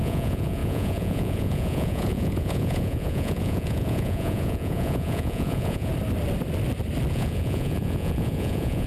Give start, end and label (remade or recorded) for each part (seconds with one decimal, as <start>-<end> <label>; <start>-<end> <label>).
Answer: 0.0-5.9 remade; 5.9-7.1 recorded; 7.1-8.9 remade